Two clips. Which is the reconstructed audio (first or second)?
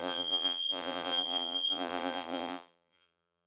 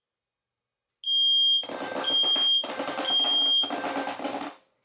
first